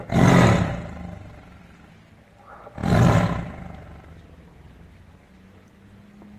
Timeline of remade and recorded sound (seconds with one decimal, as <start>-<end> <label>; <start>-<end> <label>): 0.0-6.4 recorded